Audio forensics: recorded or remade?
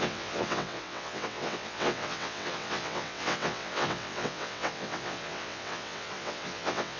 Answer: remade